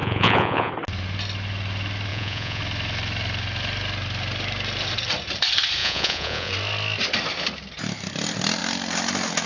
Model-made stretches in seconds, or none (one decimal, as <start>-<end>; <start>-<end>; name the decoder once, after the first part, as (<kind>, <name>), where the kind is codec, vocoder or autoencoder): 0.0-0.7 (vocoder, Vocos); 2.1-2.6; 5.8-6.5